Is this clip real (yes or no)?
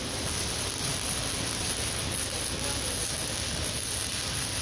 yes